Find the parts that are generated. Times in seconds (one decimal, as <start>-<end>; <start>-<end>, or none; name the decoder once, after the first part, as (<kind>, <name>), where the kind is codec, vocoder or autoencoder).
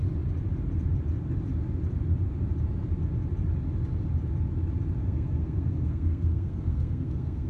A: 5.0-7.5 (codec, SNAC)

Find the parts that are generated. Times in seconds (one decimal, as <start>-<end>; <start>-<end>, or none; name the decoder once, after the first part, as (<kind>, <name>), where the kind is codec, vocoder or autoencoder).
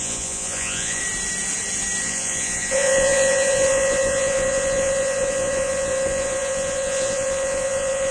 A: 0.0-1.0 (vocoder, Vocos); 2.0-8.1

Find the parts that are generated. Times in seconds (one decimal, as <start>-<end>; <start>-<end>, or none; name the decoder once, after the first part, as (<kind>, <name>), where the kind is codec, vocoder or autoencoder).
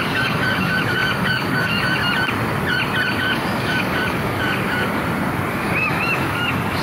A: 0.0-2.0 (codec, DAC); 3.1-5.0; 5.5-6.8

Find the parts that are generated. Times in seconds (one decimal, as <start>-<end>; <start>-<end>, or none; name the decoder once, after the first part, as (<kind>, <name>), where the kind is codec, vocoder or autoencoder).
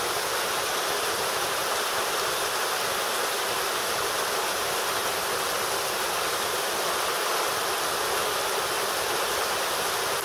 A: none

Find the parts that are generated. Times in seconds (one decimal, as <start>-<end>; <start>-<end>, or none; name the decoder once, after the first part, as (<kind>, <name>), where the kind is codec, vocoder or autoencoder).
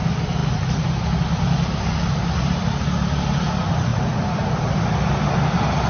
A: none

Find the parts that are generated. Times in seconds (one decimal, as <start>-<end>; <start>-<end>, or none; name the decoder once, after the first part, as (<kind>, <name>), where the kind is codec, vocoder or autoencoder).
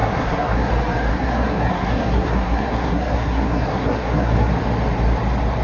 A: 0.0-0.7 (codec, SNAC); 1.1-4.5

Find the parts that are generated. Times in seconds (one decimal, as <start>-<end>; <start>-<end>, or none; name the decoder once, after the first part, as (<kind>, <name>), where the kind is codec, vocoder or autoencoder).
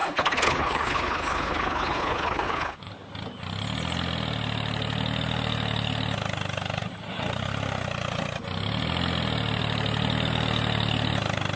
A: 0.0-2.9 (codec, HILCodec)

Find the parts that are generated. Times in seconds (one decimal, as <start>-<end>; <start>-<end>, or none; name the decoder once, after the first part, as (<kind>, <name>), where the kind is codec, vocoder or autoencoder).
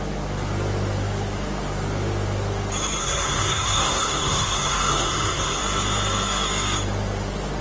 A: 3.0-5.6 (codec, SNAC)